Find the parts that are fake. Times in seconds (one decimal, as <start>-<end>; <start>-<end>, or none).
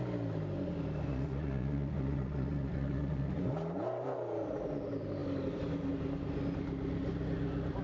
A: 1.1-3.5